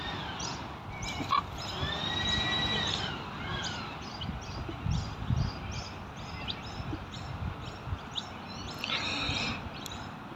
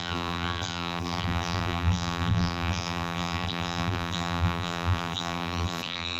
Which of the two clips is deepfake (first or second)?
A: second